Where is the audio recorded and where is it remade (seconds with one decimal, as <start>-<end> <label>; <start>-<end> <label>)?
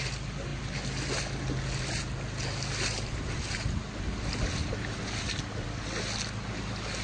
0.0-4.6 recorded; 4.6-5.2 remade; 5.2-7.0 recorded